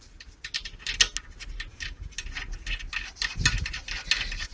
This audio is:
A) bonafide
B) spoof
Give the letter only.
A